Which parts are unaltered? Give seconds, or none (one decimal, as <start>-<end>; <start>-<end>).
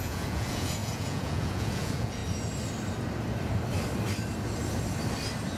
2.2-5.6